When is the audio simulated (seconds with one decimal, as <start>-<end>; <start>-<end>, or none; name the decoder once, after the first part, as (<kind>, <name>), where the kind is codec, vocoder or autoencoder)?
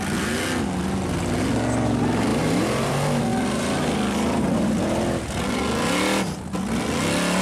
2.3-2.9 (vocoder, BigVGAN v2); 3.3-5.6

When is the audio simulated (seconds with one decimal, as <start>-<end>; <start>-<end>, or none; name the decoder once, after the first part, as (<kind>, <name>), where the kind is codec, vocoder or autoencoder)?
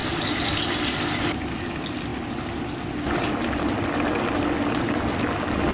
none